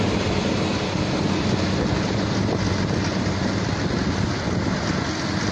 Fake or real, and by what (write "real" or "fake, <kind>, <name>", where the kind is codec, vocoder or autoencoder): real